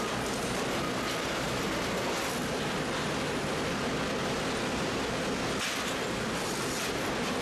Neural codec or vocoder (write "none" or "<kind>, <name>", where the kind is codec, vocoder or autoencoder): none